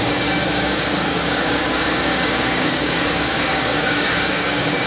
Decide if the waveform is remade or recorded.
remade